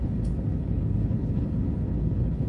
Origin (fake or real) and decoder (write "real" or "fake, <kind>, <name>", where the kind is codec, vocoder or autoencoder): fake, codec, HILCodec